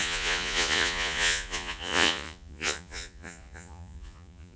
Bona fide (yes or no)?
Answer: no